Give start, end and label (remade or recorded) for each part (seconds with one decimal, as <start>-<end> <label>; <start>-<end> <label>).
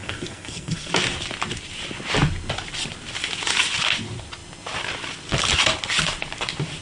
0.0-0.9 remade; 0.9-6.8 recorded